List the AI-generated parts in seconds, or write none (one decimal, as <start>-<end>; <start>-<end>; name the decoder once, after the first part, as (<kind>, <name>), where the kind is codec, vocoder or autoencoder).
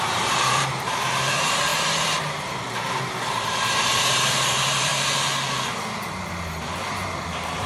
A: 0.0-4.9 (vocoder, BigVGAN v2); 7.2-7.7